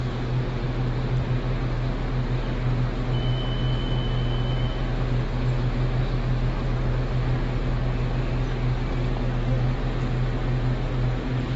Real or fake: real